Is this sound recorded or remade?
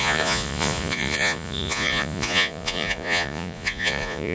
remade